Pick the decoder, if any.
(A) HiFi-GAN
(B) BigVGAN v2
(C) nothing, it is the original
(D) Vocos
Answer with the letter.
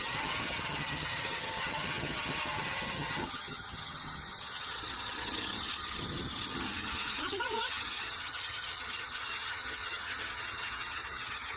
A